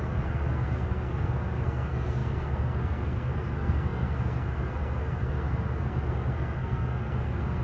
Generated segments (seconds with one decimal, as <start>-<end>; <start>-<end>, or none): 0.0-7.6